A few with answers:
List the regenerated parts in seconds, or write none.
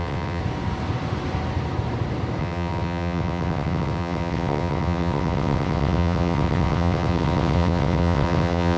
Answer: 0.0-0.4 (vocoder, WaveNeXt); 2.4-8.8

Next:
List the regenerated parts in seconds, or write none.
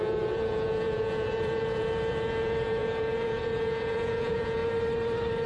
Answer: 0.0-4.6 (vocoder, Vocos)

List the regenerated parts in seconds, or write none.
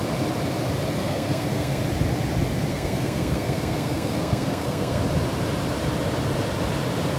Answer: 1.0-1.8 (codec, SNAC); 2.7-5.0